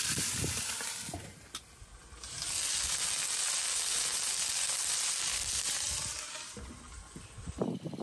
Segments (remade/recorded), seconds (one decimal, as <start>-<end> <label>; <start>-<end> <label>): 0.0-8.0 recorded